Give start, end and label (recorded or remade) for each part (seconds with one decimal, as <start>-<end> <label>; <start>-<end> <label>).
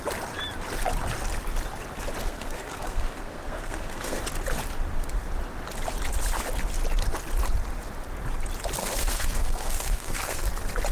0.0-2.2 recorded; 2.2-4.2 remade; 4.2-8.8 recorded; 8.8-10.5 remade; 10.5-10.9 recorded